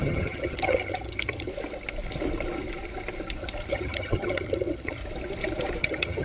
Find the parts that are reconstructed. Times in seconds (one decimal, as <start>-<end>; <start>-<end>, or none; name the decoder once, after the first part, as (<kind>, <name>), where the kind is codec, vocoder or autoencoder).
0.0-1.5 (vocoder, HiFi-GAN); 3.7-5.0; 5.8-6.2